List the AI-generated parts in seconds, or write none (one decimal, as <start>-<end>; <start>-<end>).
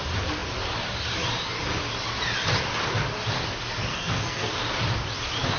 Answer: 3.9-4.5